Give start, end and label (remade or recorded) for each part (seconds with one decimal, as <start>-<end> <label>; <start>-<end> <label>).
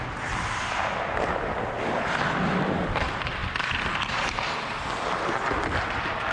0.0-6.3 recorded